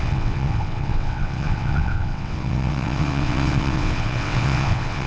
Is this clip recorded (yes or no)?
no